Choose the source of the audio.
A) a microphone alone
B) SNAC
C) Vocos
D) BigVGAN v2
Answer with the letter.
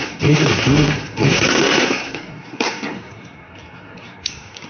B